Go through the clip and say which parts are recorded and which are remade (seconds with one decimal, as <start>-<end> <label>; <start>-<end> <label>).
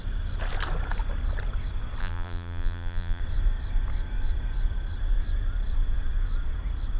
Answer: 0.0-2.0 recorded; 2.0-3.2 remade; 3.2-7.0 recorded